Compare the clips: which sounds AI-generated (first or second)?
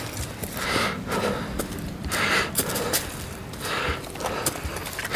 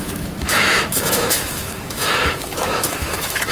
second